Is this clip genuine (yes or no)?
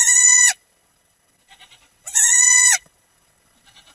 no